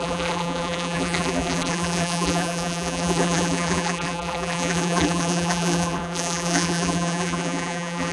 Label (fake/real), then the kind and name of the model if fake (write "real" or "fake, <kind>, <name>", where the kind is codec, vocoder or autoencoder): fake, vocoder, BigVGAN v2